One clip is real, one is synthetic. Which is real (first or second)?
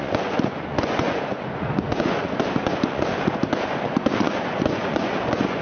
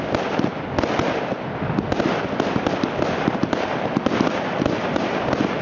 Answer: second